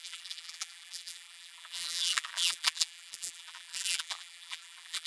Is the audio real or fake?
fake